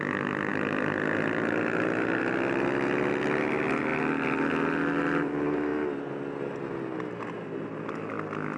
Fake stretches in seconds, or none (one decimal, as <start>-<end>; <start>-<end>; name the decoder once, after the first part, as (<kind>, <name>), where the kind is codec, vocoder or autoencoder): none